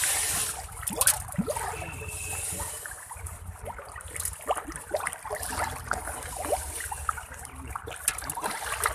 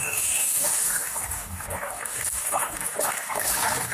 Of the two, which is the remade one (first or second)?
second